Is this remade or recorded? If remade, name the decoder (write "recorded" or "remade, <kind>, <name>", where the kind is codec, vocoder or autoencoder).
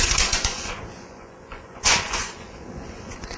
remade, vocoder, Vocos